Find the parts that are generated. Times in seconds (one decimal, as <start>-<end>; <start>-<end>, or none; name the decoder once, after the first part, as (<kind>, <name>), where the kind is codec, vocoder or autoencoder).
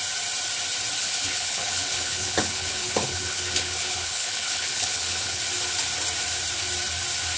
1.0-5.4 (codec, HILCodec)